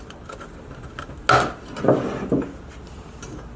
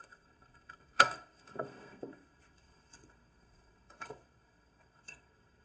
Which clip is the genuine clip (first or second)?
first